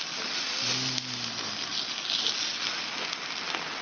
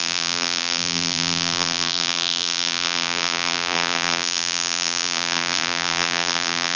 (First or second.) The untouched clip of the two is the first